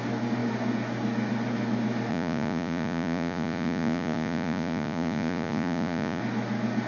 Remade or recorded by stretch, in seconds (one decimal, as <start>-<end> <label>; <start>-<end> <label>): 0.0-2.1 recorded; 2.1-6.2 remade; 6.2-6.9 recorded